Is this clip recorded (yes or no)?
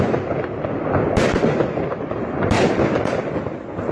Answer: yes